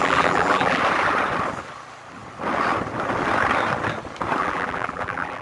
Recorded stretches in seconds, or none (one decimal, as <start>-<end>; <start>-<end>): 0.8-4.4

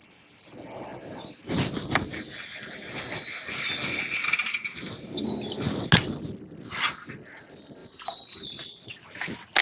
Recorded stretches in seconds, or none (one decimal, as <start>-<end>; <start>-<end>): 0.0-7.8; 8.6-9.6

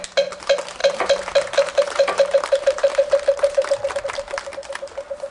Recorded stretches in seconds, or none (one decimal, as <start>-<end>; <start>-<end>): 0.0-0.8; 4.0-5.3